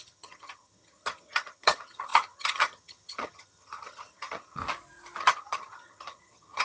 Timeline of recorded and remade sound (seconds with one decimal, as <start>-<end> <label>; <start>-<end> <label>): 0.0-4.6 remade; 4.6-5.2 recorded; 5.2-6.6 remade